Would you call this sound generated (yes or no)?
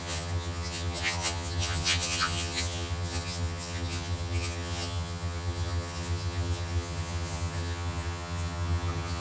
yes